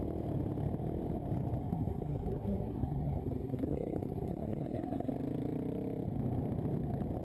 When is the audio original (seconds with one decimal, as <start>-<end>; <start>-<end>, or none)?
0.0-1.6; 5.1-7.2